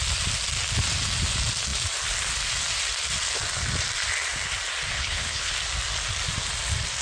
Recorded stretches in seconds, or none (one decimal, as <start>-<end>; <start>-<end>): 0.0-4.9; 5.5-7.0